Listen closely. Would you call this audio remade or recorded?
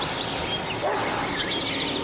recorded